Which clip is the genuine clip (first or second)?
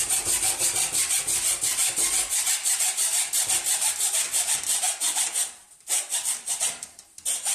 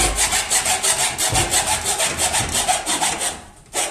second